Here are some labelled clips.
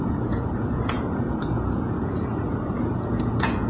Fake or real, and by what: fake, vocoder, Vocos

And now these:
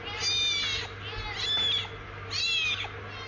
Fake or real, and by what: real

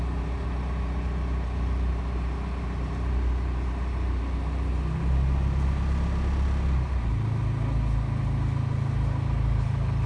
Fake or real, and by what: real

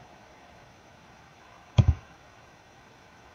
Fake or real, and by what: fake, autoencoder, DAC-VAE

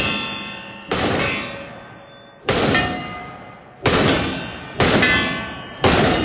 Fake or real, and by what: fake, vocoder, BigVGAN v2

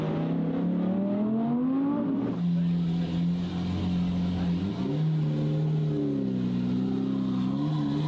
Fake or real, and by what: real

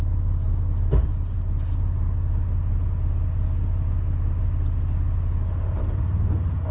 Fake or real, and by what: real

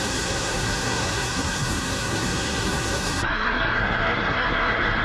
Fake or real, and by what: fake, codec, SNAC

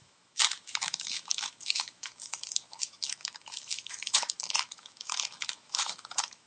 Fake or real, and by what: fake, autoencoder, DAC-VAE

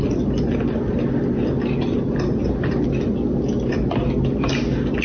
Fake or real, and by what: real